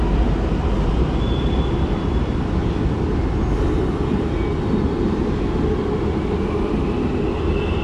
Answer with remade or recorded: recorded